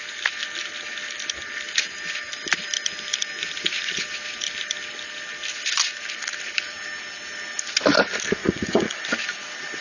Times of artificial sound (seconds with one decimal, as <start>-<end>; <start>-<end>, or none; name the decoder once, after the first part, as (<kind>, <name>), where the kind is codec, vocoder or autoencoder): 8.4-9.0 (vocoder, Vocos)